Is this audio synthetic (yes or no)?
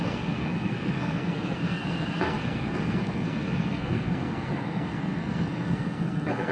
yes